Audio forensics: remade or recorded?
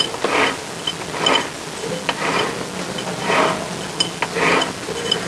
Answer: recorded